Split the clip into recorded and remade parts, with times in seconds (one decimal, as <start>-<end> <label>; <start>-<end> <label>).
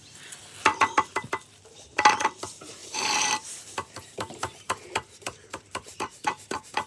0.0-2.8 recorded; 2.8-6.9 remade